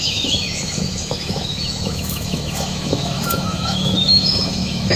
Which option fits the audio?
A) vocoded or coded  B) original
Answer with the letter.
A